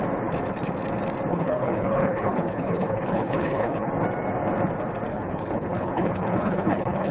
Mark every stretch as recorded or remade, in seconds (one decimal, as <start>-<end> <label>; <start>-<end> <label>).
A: 0.0-1.3 recorded; 1.3-3.9 remade; 3.9-5.1 recorded; 5.1-7.1 remade